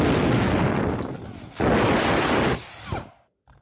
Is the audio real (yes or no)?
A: yes